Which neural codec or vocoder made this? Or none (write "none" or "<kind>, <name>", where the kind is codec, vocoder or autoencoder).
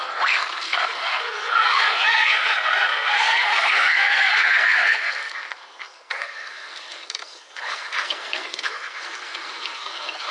codec, SNAC